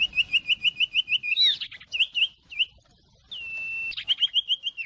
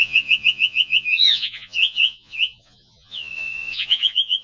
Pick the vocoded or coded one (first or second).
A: second